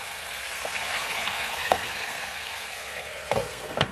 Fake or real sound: fake